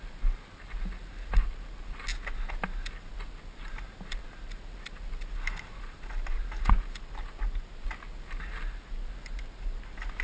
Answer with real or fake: real